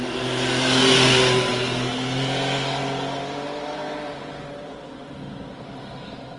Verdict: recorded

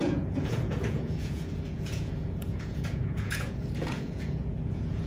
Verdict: remade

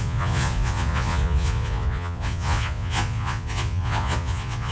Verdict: remade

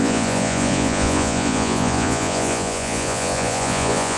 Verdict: remade